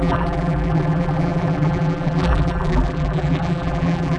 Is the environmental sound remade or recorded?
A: remade